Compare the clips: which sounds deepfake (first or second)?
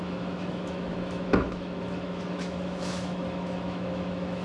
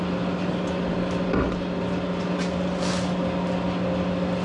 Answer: first